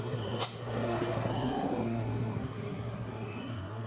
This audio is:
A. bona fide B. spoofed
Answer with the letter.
B